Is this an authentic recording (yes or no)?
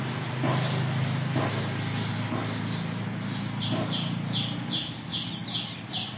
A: yes